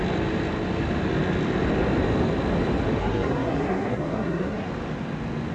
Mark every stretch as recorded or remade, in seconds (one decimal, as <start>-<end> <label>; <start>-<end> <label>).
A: 0.0-3.0 recorded; 3.0-4.7 remade; 4.7-5.5 recorded